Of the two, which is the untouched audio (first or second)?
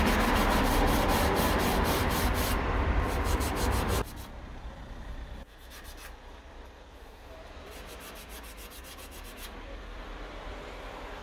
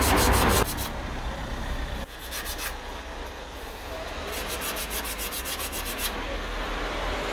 second